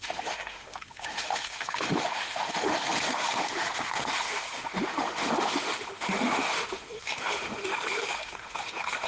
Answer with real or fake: fake